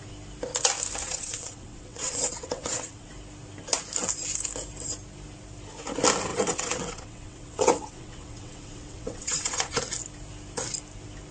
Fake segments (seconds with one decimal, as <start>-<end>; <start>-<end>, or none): 1.0-3.1; 6.3-9.8

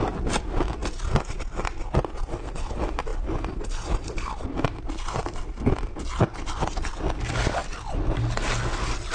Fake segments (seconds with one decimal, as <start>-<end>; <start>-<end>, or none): none

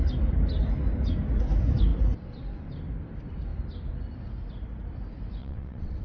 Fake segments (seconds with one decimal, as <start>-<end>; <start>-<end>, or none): 5.4-6.0

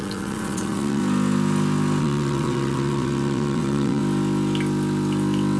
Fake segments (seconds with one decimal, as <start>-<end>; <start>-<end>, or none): 0.0-1.0; 2.0-4.0